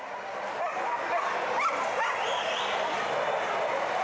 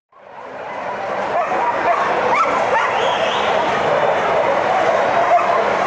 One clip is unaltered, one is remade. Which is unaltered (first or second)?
first